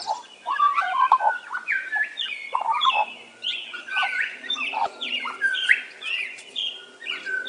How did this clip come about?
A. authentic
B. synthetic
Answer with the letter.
B